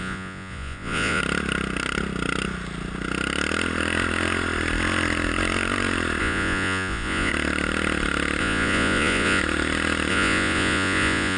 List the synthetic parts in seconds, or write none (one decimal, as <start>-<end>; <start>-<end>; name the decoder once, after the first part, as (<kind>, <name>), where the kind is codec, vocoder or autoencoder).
0.0-1.2 (vocoder, Vocos); 6.2-7.3; 8.4-9.4; 10.1-11.4